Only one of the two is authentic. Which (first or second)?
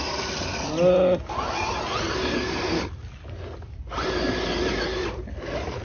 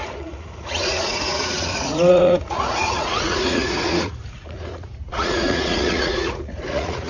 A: first